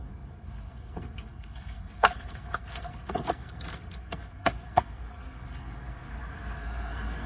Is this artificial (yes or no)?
yes